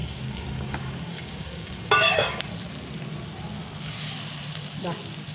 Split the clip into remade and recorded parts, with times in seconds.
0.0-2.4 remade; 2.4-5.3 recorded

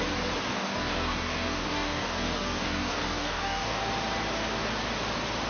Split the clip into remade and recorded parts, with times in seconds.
0.0-0.5 recorded; 0.5-3.8 remade; 3.8-5.5 recorded